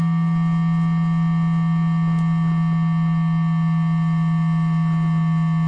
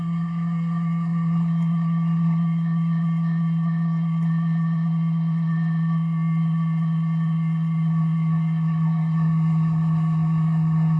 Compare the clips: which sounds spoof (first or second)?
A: second